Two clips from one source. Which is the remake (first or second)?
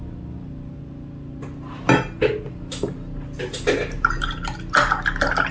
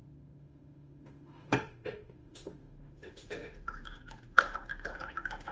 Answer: second